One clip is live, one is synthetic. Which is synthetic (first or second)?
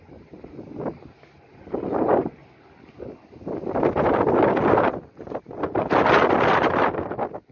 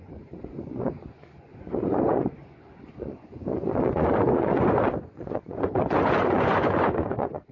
second